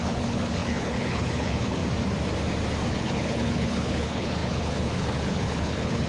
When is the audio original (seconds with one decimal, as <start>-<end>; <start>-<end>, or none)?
1.8-2.9